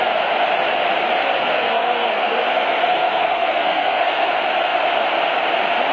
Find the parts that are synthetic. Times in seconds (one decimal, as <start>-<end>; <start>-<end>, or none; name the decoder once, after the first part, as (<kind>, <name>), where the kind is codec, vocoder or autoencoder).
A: 1.4-4.3 (codec, SNAC)